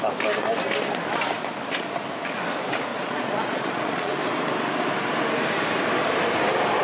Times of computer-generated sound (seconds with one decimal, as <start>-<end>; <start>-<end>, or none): 2.9-4.1